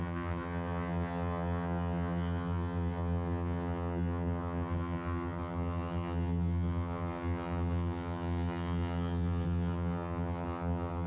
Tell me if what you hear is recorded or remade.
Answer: remade